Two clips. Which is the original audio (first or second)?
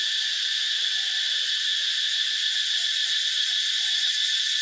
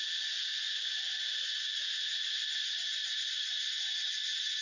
second